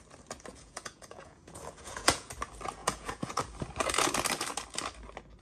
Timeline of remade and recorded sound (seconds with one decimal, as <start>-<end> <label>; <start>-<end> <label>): 0.0-0.5 recorded; 0.5-2.3 remade; 2.3-2.8 recorded; 2.8-3.4 remade; 3.4-5.4 recorded